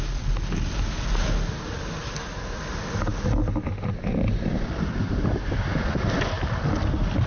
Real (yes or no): yes